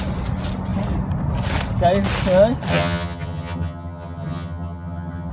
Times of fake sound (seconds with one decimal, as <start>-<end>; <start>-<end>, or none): 2.7-5.3